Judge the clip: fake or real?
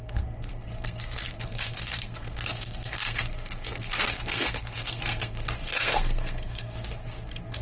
fake